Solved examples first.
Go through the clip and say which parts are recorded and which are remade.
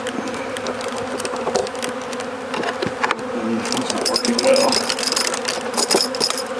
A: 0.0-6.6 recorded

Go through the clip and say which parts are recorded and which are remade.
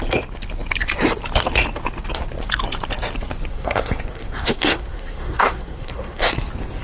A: 0.0-3.5 recorded; 3.5-6.3 remade; 6.3-6.8 recorded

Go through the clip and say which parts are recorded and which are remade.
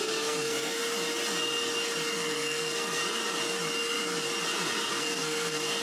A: 0.0-0.8 remade; 0.8-2.1 recorded; 2.1-3.0 remade; 3.0-4.9 recorded; 4.9-5.8 remade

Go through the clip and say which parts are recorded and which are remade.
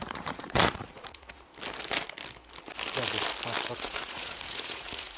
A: 0.0-1.5 remade; 1.5-3.7 recorded; 3.7-5.2 remade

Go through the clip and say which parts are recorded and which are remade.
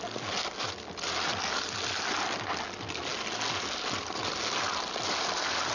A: 0.0-5.7 recorded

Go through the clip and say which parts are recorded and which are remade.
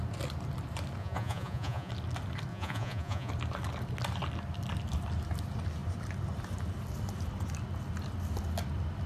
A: 0.0-1.0 recorded; 1.0-1.9 remade; 1.9-2.5 recorded; 2.5-3.3 remade; 3.3-9.1 recorded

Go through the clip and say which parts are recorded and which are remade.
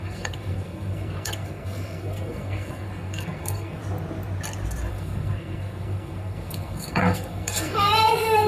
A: 0.0-3.8 remade; 3.8-4.9 recorded; 4.9-8.5 remade